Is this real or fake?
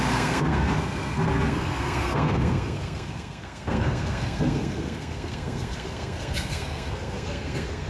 fake